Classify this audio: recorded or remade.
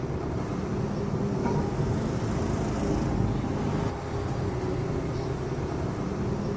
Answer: recorded